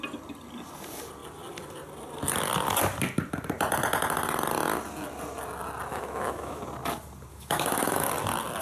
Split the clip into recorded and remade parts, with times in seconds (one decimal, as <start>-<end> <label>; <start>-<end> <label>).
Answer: 0.0-5.9 recorded; 5.9-6.6 remade; 6.6-7.3 recorded; 7.3-8.1 remade; 8.1-8.6 recorded